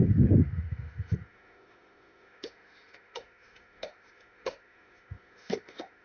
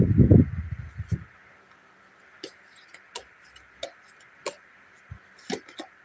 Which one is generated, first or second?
first